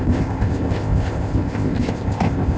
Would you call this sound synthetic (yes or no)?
yes